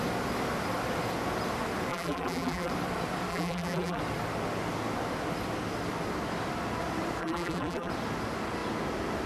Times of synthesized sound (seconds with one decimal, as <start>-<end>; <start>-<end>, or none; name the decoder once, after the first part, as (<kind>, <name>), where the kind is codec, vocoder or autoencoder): 1.9-2.7 (vocoder, BigVGAN v2); 3.3-4.0; 7.2-7.9